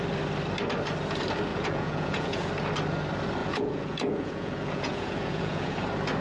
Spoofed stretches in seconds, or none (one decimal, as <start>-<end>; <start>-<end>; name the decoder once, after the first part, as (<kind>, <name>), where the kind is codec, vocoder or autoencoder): 1.5-2.5 (vocoder, Vocos); 3.4-5.8